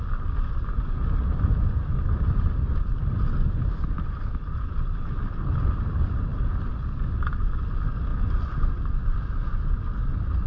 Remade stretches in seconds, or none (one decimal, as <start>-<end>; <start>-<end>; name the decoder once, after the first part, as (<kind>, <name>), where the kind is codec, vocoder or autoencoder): none

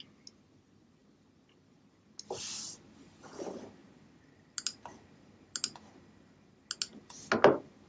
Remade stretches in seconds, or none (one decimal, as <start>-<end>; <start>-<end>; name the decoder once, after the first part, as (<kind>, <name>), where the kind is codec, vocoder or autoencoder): none

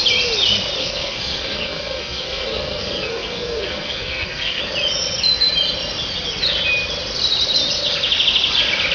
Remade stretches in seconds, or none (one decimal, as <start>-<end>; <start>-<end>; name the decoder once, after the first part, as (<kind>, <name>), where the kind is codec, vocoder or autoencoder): 0.8-4.6 (codec, SNAC)

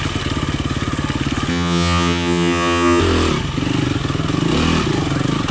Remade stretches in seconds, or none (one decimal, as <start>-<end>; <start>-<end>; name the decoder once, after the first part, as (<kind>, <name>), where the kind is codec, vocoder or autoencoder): 1.5-3.0 (vocoder, HiFi-GAN)

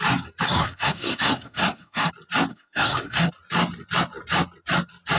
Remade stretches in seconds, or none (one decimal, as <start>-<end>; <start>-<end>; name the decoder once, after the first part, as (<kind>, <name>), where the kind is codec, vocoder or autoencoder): 0.6-2.1 (codec, SNAC); 2.5-3.3

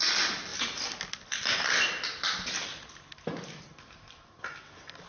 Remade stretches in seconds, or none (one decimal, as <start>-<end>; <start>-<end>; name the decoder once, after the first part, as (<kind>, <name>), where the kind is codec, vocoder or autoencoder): none